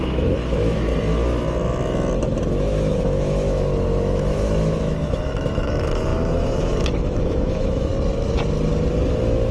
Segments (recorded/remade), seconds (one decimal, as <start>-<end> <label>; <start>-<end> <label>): 0.0-0.9 remade; 0.9-2.4 recorded; 2.4-7.9 remade; 7.9-9.1 recorded; 9.1-9.5 remade